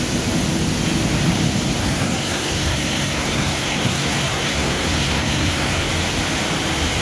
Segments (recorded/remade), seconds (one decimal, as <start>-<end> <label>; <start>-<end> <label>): 0.0-1.8 recorded; 1.8-5.9 remade; 5.9-7.0 recorded